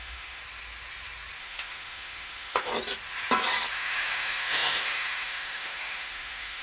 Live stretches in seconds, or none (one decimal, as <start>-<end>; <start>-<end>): 0.4-1.4; 2.7-3.7

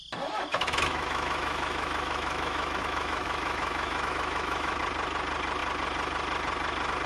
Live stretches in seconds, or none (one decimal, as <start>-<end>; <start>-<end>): 0.0-0.5; 4.8-7.1

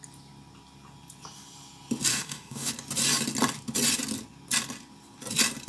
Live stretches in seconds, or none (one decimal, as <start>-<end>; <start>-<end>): 0.0-2.1; 2.7-5.7

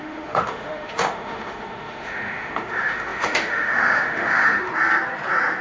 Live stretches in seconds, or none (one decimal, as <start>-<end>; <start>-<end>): 4.7-5.6

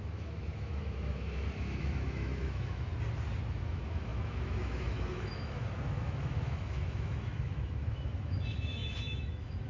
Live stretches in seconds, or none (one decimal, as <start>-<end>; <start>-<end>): 2.9-3.5